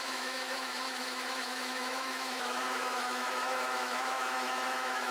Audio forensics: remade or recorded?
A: remade